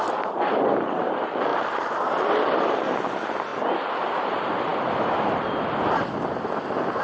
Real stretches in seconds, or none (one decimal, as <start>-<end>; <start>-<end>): 0.0-1.5; 2.6-4.7; 5.6-7.0